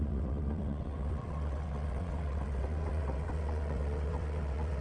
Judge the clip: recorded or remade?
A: remade